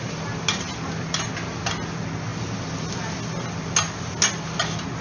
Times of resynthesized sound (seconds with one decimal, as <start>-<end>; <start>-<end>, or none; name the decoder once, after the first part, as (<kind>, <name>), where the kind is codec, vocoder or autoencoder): none